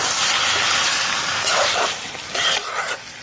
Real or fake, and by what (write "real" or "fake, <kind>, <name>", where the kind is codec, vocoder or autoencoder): real